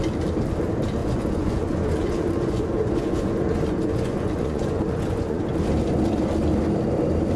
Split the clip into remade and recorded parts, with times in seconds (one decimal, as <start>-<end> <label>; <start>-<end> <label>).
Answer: 0.0-1.0 recorded; 1.0-5.4 remade; 5.4-7.4 recorded

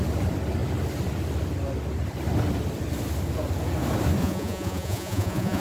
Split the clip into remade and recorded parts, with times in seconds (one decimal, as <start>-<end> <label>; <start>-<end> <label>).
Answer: 0.0-4.2 recorded; 4.2-5.6 remade